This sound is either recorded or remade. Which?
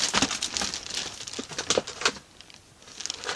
recorded